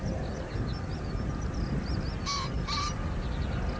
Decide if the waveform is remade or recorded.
recorded